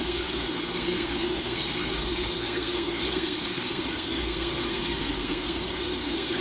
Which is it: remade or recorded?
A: remade